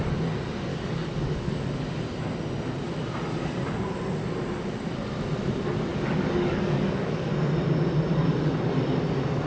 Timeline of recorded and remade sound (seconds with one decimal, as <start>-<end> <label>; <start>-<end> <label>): 0.0-0.7 recorded; 0.7-1.7 remade; 1.7-5.9 recorded; 5.9-7.3 remade; 7.3-9.5 recorded